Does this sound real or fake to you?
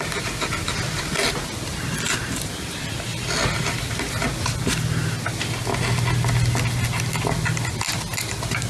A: real